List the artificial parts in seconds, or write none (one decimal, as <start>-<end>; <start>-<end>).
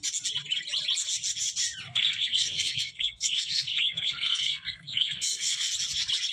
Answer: 1.9-5.7